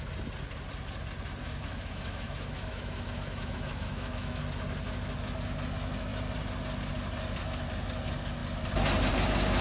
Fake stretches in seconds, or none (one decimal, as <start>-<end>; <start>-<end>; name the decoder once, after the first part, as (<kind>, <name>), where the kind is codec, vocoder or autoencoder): 1.4-4.4 (autoencoder, DAC-VAE)